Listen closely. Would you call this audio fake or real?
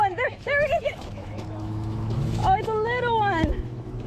fake